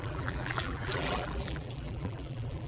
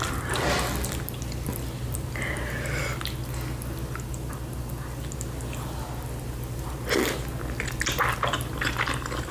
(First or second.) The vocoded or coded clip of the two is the first